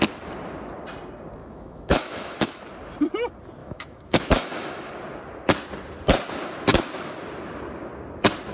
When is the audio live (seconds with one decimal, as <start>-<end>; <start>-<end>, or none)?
0.0-1.4; 2.6-3.6; 4.9-8.5